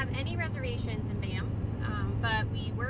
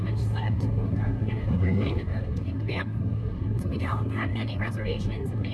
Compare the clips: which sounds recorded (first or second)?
first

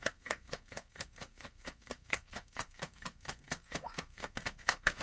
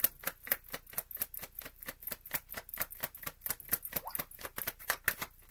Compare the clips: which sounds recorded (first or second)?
second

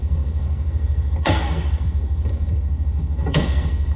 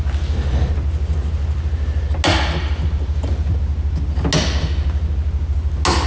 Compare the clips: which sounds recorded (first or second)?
second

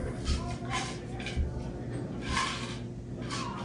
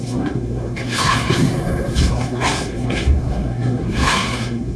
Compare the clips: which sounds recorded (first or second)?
first